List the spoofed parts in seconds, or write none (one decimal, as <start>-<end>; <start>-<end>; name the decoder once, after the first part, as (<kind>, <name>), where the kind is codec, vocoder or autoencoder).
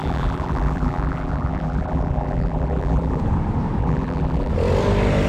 0.0-3.2 (vocoder, BigVGAN v2); 3.8-4.5